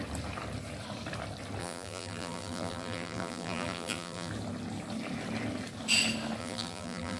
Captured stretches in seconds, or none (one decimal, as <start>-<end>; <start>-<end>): 0.0-1.6; 4.3-6.4